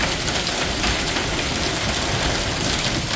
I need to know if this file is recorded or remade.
recorded